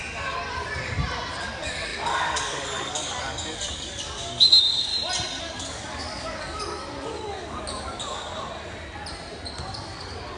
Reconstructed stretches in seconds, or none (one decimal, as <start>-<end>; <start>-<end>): 0.0-0.4; 1.4-4.9; 5.4-8.3; 9.8-10.4